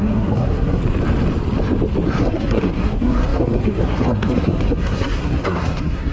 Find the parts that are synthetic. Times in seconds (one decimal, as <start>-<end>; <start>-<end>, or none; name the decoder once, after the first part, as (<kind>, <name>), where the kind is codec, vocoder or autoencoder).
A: 0.0-0.8 (codec, SNAC); 2.2-6.1